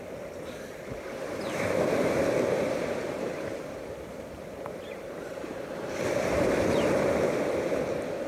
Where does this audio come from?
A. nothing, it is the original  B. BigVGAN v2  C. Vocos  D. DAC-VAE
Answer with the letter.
B